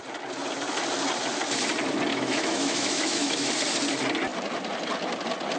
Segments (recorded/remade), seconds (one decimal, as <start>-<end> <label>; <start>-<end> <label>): 0.0-2.1 recorded; 2.1-3.5 remade; 3.5-5.6 recorded